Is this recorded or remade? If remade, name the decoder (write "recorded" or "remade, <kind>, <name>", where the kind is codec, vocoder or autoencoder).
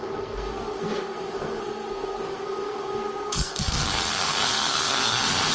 remade, codec, SNAC